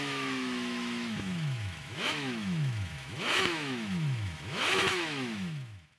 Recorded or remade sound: remade